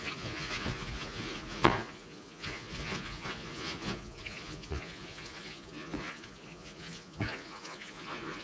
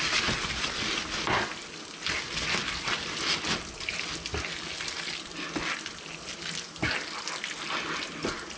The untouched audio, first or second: second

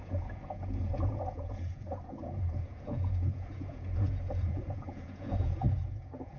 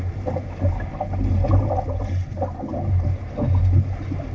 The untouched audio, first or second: second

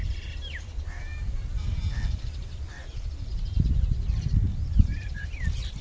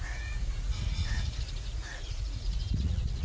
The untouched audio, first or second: first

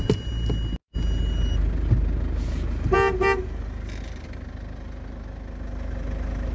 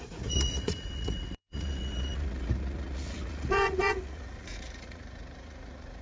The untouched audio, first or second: first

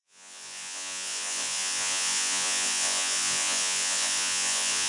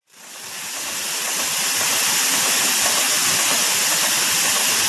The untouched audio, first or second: second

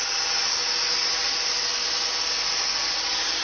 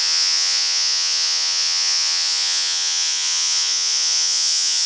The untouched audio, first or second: first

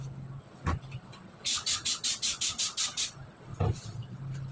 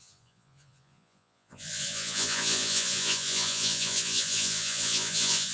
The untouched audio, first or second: first